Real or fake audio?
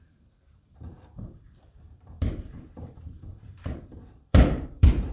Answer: fake